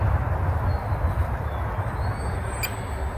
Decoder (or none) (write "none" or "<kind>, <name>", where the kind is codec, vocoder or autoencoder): none